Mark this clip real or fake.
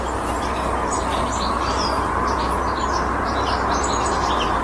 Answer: fake